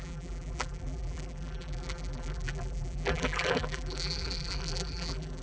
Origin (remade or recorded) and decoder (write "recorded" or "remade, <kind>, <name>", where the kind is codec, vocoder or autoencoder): remade, vocoder, BigVGAN v2